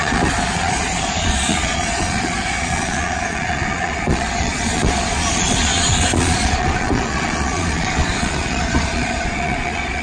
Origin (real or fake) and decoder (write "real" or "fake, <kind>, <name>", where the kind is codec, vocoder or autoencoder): fake, vocoder, Vocos